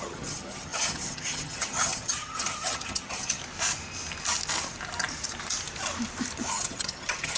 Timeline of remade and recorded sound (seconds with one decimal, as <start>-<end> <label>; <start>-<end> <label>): 0.0-3.4 remade; 3.4-6.5 recorded; 6.5-7.4 remade